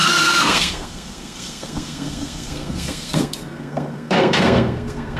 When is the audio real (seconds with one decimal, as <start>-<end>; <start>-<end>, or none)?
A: none